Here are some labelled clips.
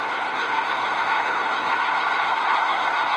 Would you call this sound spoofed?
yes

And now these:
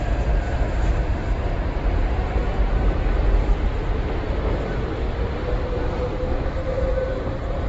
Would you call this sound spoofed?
yes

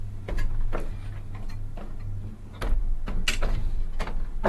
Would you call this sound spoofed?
no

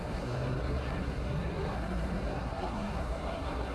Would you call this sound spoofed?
yes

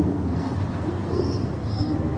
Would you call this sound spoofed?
yes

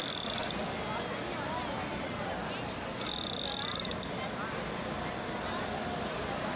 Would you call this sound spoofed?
no